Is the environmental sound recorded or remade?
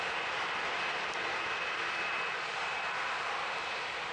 recorded